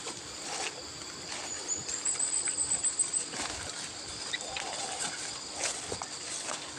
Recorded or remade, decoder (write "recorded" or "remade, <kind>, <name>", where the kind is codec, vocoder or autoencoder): recorded